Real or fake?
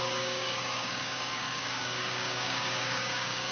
fake